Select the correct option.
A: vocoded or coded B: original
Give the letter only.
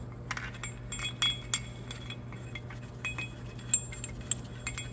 B